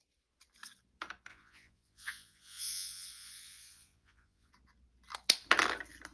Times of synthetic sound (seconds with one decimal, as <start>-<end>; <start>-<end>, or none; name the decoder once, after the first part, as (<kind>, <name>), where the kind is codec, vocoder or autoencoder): 1.3-4.5 (vocoder, Vocos)